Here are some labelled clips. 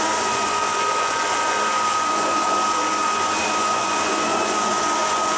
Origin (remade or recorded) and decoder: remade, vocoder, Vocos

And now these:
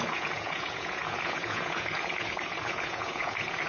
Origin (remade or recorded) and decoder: remade, vocoder, Vocos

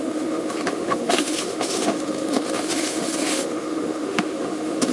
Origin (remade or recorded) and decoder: remade, autoencoder, DAC-VAE